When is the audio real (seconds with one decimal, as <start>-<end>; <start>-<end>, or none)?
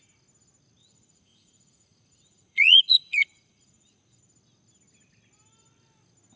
0.0-0.8; 4.2-6.4